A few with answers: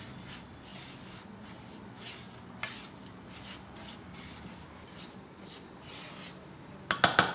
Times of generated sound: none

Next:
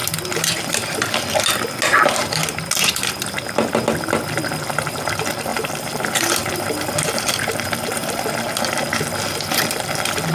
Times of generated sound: 5.5-8.2 (vocoder, BigVGAN v2)

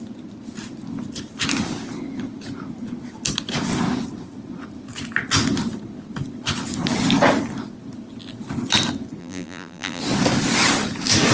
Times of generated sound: 9.2-10.0 (vocoder, BigVGAN v2)

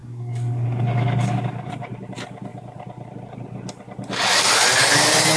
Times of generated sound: 0.0-1.7 (codec, DAC)

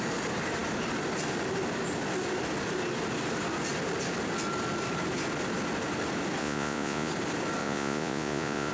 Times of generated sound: 6.4-7.1 (vocoder, Vocos); 7.6-8.7

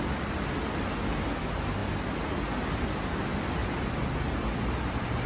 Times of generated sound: none